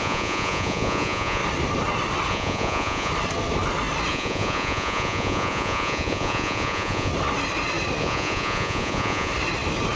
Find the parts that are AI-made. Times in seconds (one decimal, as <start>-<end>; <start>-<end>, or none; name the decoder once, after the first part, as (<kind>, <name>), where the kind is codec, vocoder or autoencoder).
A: 0.0-1.4 (vocoder, Vocos); 2.3-3.1; 4.1-7.1; 8.0-9.3